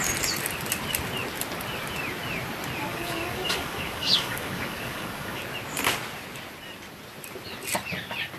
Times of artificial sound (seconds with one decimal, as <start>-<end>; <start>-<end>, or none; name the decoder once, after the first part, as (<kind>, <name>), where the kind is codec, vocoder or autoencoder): 2.9-5.4 (codec, DAC)